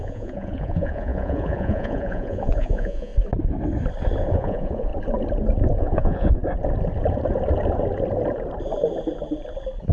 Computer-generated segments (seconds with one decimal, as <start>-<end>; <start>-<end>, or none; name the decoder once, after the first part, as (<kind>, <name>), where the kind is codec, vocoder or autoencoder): 0.0-3.1 (vocoder, Vocos); 4.3-4.9; 5.8-6.4